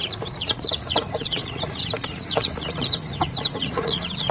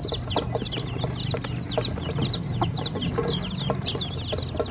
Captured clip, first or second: second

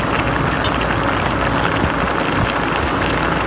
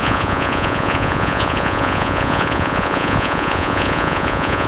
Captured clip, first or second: first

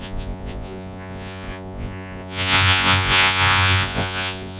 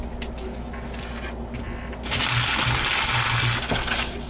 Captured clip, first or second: second